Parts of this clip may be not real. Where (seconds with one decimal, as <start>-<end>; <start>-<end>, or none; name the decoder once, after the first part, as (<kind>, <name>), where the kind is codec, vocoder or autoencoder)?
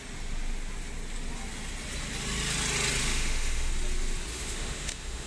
3.0-3.7 (autoencoder, DAC-VAE); 4.3-5.3